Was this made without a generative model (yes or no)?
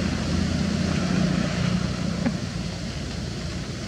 yes